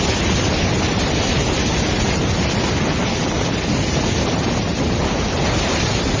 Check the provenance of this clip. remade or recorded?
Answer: recorded